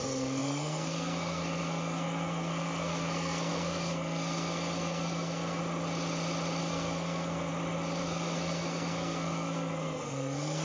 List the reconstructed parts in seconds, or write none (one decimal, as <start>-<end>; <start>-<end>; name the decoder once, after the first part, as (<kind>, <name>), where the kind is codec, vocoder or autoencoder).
0.0-5.6 (codec, SNAC); 6.6-7.5; 8.0-10.6